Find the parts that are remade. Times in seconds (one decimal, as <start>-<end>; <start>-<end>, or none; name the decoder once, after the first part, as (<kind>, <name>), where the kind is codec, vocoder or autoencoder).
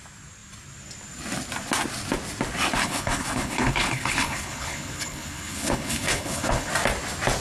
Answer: 2.8-6.7 (codec, HILCodec)